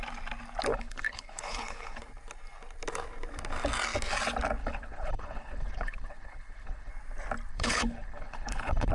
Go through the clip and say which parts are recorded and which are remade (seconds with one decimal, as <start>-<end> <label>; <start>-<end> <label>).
0.0-0.7 recorded; 0.7-2.0 remade; 2.0-4.6 recorded; 4.6-6.9 remade; 6.9-7.5 recorded; 7.5-8.9 remade